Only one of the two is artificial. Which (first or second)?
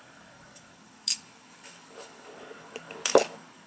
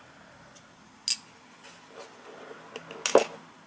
first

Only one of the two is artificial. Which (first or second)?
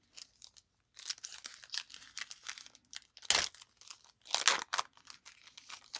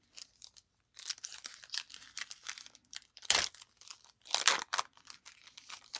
second